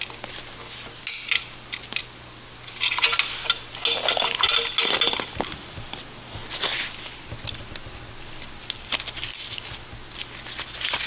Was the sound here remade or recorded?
recorded